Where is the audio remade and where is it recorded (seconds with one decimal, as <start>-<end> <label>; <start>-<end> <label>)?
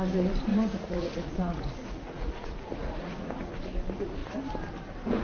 0.0-0.5 recorded; 0.5-3.5 remade; 3.5-5.2 recorded